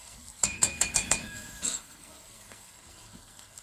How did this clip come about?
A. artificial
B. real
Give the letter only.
A